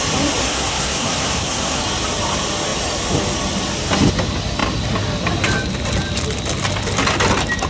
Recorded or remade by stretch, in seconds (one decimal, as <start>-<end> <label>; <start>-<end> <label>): 0.0-0.4 recorded; 0.4-1.8 remade; 1.8-7.7 recorded